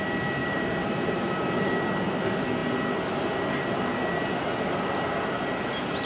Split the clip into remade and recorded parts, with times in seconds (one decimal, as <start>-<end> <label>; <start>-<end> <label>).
0.0-0.4 recorded; 0.4-1.7 remade; 1.7-6.1 recorded